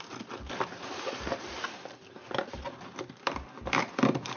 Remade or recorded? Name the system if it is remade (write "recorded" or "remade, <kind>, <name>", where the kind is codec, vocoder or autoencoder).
recorded